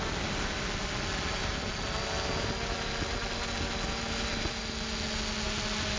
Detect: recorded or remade recorded